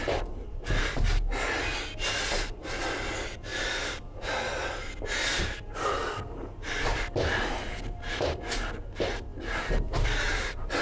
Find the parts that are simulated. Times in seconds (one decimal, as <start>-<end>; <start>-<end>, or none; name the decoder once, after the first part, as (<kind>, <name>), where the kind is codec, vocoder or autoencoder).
0.0-0.8 (vocoder, BigVGAN v2); 3.5-8.1; 9.3-10.8